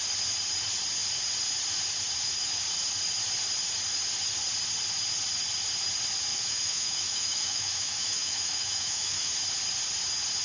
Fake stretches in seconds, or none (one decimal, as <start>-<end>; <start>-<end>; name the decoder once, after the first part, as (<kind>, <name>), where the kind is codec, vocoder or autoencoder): 6.3-9.3 (autoencoder, DAC-VAE)